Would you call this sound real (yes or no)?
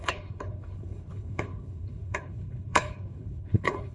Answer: no